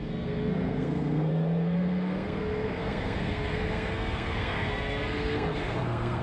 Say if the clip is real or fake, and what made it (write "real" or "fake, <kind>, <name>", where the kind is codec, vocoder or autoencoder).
fake, codec, SNAC